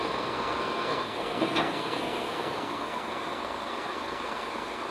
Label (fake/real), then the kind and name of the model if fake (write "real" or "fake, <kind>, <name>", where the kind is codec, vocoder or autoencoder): fake, codec, SNAC